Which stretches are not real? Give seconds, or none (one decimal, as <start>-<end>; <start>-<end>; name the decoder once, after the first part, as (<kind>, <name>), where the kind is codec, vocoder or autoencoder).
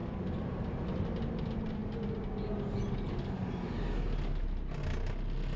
none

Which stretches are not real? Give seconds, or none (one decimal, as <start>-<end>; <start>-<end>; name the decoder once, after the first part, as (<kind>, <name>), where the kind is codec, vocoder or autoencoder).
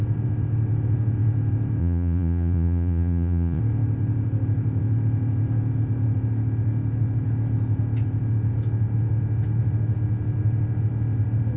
1.8-3.6 (vocoder, Vocos)